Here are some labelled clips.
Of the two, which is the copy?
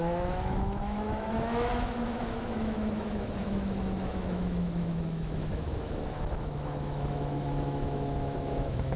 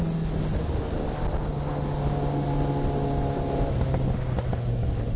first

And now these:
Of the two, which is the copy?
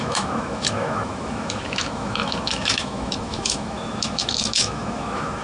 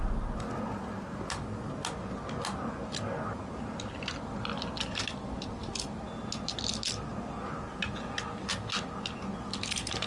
first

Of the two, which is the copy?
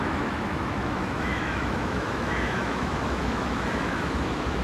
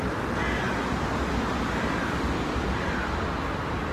first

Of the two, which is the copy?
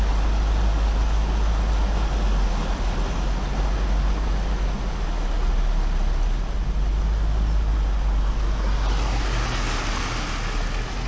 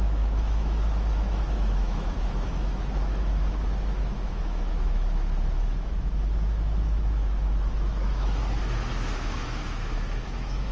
second